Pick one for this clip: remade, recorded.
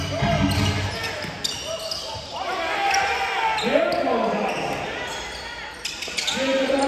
recorded